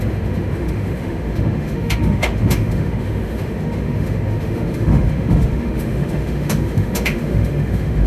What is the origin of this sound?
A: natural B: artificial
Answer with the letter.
B